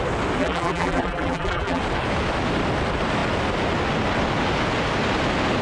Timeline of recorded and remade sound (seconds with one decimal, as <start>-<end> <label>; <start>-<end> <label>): 0.0-0.4 recorded; 0.4-1.8 remade; 1.8-5.6 recorded